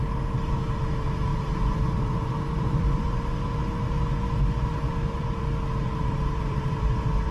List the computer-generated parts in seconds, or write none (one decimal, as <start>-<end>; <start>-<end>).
0.0-3.6; 5.1-7.3